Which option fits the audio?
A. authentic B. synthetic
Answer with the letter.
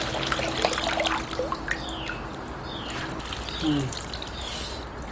A